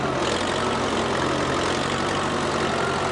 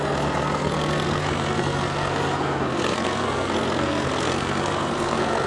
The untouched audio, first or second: first